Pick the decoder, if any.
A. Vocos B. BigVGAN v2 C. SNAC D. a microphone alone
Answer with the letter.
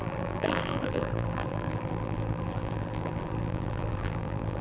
B